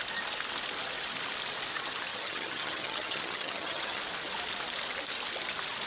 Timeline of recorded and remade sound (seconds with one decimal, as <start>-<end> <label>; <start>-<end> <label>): 0.0-2.1 recorded; 2.1-4.0 remade; 4.0-5.9 recorded